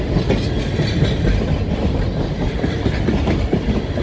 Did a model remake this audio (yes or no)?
no